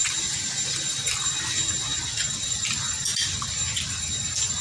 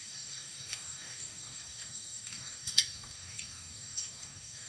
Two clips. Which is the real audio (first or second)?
first